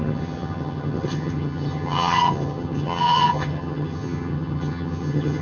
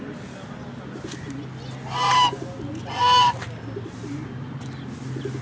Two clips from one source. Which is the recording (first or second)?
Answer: second